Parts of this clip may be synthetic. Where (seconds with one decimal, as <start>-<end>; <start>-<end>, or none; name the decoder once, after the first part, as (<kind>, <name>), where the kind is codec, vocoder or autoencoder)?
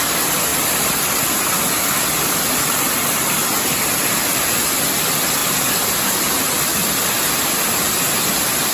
none